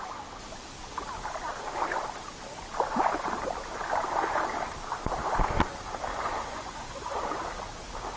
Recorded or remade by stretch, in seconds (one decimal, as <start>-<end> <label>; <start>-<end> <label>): 0.0-6.1 recorded; 6.1-7.2 remade; 7.2-8.2 recorded